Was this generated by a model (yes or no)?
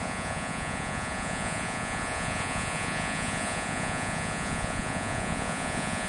yes